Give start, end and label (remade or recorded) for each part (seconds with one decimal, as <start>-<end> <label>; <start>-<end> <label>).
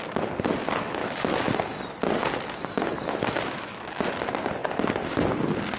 0.0-1.0 recorded; 1.0-1.5 remade; 1.5-2.6 recorded; 2.6-4.0 remade; 4.0-5.8 recorded